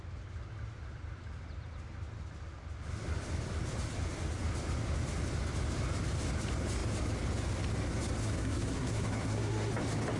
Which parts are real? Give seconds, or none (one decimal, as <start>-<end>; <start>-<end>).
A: 0.0-8.2; 9.7-10.2